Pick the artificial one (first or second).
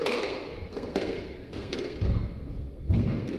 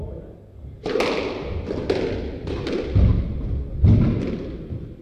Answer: first